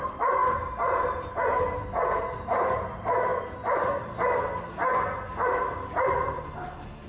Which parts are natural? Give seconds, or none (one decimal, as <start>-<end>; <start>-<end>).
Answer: 0.0-7.1